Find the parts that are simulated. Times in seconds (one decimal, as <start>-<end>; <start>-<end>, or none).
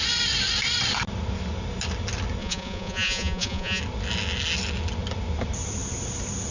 2.4-3.8